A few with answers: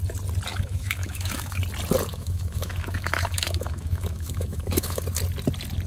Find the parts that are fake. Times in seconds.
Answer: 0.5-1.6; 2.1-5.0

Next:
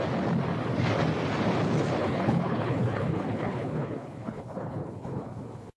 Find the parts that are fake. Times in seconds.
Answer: 2.0-5.8

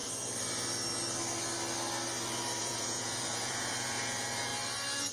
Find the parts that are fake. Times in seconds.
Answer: 2.6-4.5